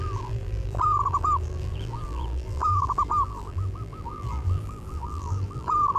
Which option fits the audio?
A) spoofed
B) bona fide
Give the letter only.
A